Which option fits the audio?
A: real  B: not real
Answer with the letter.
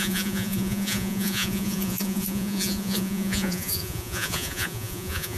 B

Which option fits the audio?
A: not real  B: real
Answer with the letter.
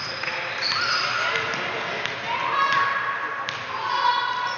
B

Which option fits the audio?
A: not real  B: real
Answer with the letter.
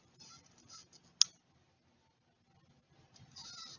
B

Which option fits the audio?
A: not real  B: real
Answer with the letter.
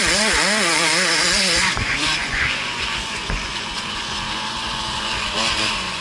A